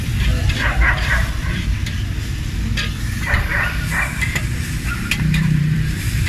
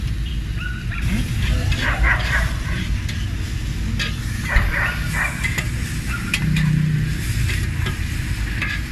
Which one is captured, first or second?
second